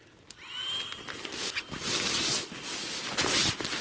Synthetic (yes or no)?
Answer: no